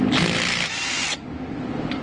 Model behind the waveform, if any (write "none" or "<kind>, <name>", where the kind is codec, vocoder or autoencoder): none